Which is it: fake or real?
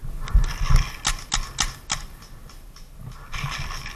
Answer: real